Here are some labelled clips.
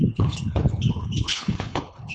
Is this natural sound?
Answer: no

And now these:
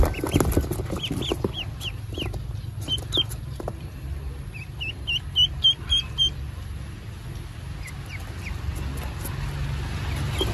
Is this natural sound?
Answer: yes